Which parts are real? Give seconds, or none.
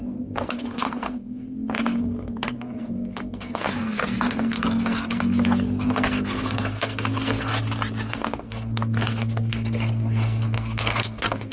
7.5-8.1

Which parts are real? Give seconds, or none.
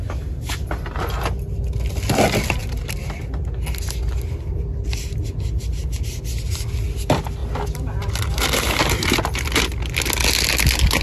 0.0-2.6; 3.2-11.0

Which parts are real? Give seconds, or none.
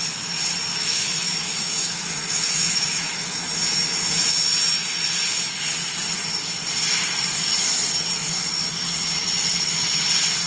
0.0-0.7; 3.5-10.5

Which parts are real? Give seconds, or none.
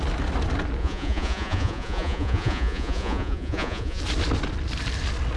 0.0-0.8; 4.0-5.4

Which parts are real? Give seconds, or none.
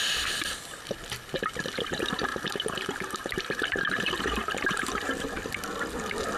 0.0-2.3; 4.7-6.4